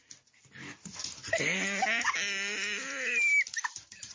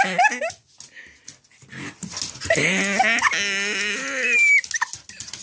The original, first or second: second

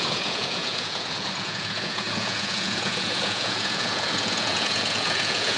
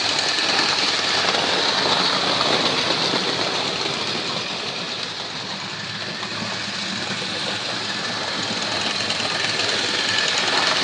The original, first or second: second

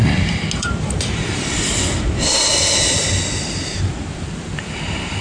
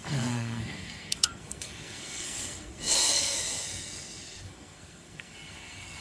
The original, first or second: first